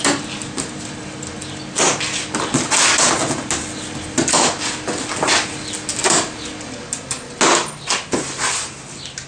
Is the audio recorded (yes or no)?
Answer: yes